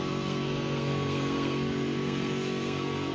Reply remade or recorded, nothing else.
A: remade